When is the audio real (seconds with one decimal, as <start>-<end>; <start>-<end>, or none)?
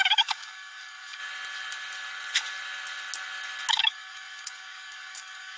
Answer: 1.2-3.7